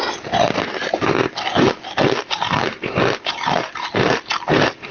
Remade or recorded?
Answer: recorded